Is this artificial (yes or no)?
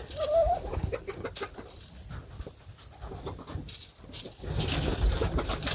no